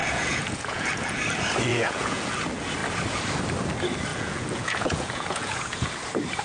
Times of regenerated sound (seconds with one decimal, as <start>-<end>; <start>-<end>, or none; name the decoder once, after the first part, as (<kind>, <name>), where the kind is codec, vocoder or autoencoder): 0.0-1.2 (vocoder, Vocos); 1.7-2.4; 4.1-5.9